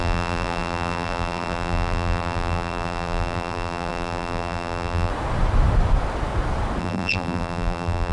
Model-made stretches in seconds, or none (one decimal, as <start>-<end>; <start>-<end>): 0.0-5.1; 6.8-8.1